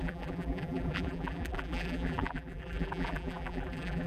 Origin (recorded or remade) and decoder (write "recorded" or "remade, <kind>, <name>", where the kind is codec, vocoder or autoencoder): remade, vocoder, BigVGAN v2